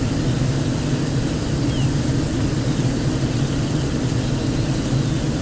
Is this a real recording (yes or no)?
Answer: yes